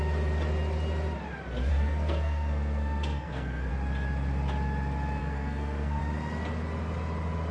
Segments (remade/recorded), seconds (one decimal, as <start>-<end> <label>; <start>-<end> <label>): 0.0-1.7 recorded; 1.7-3.7 remade; 3.7-5.2 recorded; 5.2-6.0 remade; 6.0-7.5 recorded